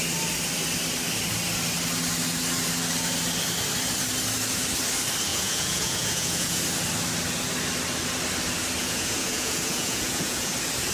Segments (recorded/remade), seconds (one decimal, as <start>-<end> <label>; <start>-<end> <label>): 0.0-5.3 recorded; 5.3-6.6 remade; 6.6-8.8 recorded; 8.8-10.5 remade; 10.5-10.9 recorded